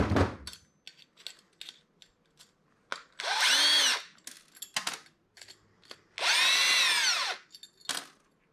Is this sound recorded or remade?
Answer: recorded